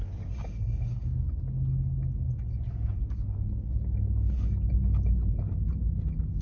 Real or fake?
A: real